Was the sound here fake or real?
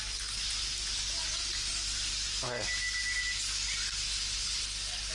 real